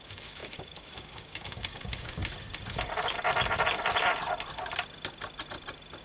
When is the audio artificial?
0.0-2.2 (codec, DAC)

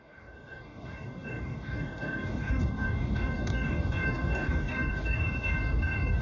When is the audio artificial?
0.0-6.2 (codec, DAC)

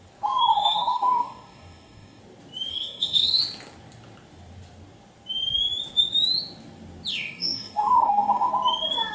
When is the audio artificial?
0.5-2.2 (codec, DAC); 2.7-3.4; 7.1-8.5

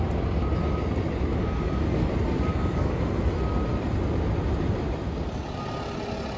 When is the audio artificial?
1.3-2.1 (codec, DAC); 2.5-3.0